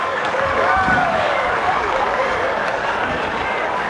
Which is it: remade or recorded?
remade